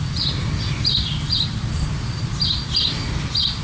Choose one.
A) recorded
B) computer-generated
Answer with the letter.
A